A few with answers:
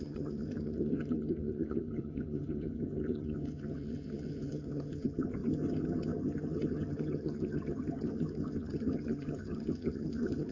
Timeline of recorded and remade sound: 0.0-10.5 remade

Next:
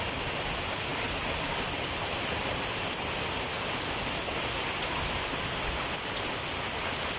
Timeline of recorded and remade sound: 0.0-7.2 recorded

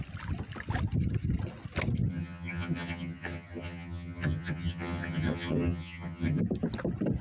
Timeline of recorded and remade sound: 0.0-2.1 recorded; 2.1-6.4 remade; 6.4-7.2 recorded

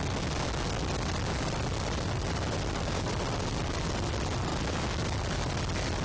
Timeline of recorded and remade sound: 0.0-6.0 recorded

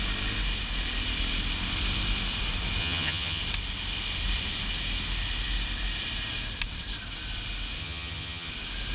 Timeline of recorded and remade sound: 0.0-2.8 recorded; 2.8-3.4 remade; 3.4-7.8 recorded; 7.8-8.5 remade; 8.5-8.9 recorded